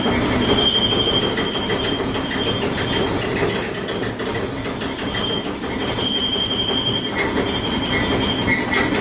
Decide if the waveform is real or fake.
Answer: real